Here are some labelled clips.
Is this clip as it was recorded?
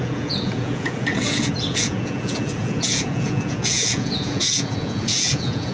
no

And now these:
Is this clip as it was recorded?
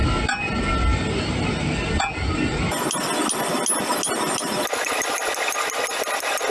yes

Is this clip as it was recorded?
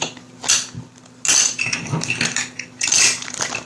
yes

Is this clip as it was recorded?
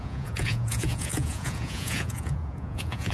no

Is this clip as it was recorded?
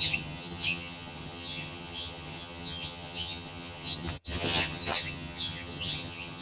no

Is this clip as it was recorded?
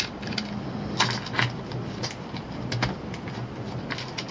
yes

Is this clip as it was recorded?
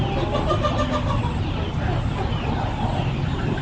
yes